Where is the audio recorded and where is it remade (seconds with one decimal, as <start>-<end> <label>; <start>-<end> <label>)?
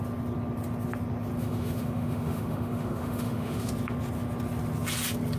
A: 0.0-1.4 recorded; 1.4-3.7 remade; 3.7-5.4 recorded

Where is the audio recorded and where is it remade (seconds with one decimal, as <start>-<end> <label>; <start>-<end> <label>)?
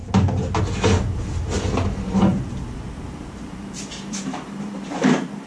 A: 0.0-2.3 recorded; 2.3-5.5 remade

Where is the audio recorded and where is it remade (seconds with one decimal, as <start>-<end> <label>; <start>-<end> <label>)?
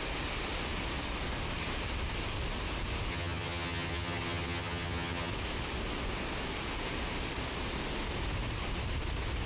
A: 0.0-3.1 recorded; 3.1-5.3 remade; 5.3-9.5 recorded